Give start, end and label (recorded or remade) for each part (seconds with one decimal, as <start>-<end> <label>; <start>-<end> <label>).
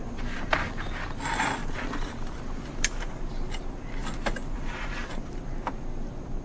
0.0-1.6 recorded; 1.6-3.2 remade; 3.2-4.0 recorded; 4.0-4.9 remade; 4.9-6.4 recorded